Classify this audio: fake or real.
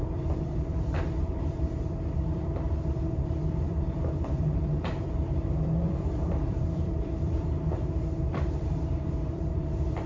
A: fake